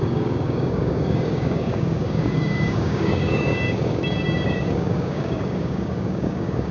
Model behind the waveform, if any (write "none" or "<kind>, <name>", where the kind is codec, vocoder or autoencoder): codec, DAC